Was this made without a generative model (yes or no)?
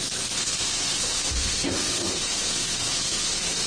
no